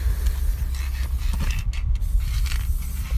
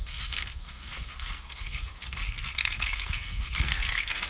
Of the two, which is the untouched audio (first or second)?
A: first